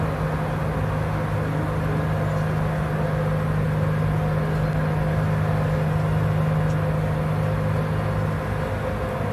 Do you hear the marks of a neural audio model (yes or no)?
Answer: no